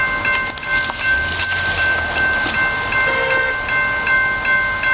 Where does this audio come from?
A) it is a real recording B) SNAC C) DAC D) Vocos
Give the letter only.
A